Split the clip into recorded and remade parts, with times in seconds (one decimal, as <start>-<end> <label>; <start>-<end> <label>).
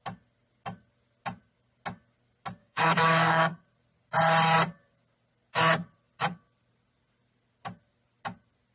0.0-2.6 recorded; 2.6-3.6 remade; 3.6-8.7 recorded